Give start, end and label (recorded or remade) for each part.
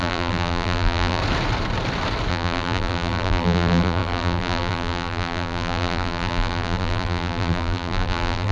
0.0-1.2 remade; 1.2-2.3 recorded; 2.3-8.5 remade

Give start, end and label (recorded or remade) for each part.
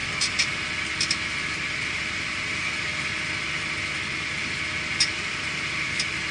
0.0-2.0 recorded; 2.0-2.9 remade; 2.9-5.3 recorded; 5.3-6.3 remade